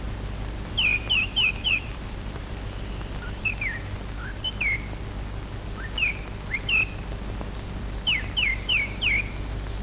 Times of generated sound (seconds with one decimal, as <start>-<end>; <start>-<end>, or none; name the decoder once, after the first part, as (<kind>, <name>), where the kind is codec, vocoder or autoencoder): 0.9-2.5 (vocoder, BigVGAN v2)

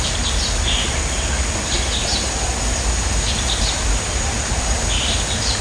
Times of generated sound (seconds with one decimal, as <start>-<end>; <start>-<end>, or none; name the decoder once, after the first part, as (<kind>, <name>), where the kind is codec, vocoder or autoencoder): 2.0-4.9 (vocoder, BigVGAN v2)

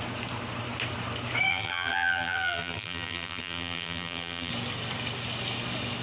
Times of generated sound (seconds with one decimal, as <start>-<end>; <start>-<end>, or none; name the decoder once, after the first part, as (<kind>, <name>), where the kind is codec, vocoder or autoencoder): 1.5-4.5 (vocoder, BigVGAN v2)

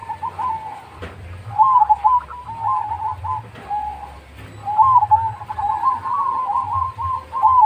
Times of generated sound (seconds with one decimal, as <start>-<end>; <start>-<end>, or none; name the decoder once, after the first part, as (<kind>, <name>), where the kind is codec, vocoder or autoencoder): none